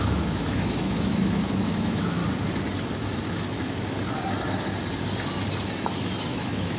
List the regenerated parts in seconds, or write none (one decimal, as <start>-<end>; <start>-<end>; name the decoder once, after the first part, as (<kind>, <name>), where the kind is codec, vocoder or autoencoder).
0.0-2.2 (autoencoder, DAC-VAE); 6.3-6.8